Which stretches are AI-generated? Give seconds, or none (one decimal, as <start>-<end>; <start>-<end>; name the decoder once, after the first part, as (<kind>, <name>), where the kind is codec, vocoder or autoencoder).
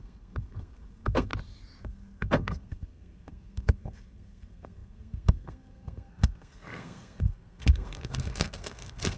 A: 0.0-1.3 (codec, SNAC); 1.8-9.2